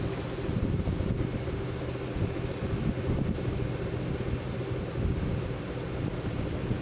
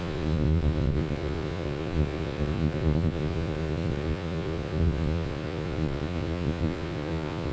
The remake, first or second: second